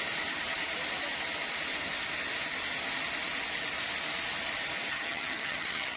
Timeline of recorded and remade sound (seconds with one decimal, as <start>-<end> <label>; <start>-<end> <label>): 0.0-4.9 recorded; 4.9-6.0 remade